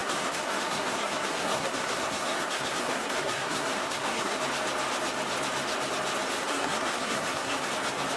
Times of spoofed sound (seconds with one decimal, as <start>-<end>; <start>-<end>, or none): 0.0-4.4; 6.4-7.7